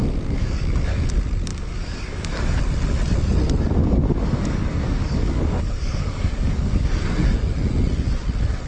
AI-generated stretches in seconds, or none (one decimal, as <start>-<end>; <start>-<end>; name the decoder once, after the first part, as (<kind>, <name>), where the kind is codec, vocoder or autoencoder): 0.0-1.1 (codec, DAC); 1.5-2.6; 3.8-6.9